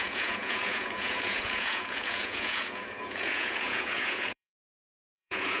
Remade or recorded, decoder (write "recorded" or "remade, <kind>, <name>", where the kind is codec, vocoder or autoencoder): remade, vocoder, Vocos